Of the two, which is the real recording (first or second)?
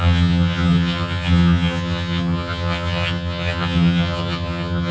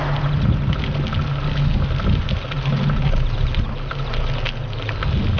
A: second